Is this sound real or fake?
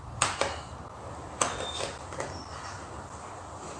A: real